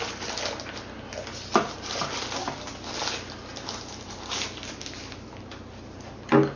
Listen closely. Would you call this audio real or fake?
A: real